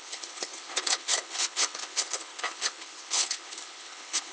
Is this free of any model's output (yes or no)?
no